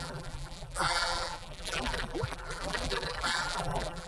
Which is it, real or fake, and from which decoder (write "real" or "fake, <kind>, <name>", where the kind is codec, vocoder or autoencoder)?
fake, vocoder, BigVGAN v2